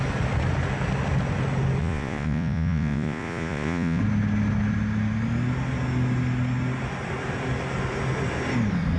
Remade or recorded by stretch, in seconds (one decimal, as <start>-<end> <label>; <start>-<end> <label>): 0.0-1.8 recorded; 1.8-4.0 remade; 4.0-9.0 recorded